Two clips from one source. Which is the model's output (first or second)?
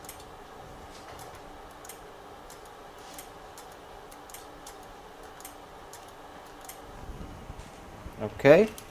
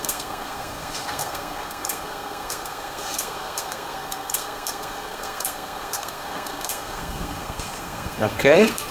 second